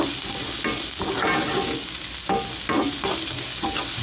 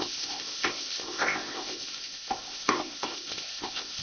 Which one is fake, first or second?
second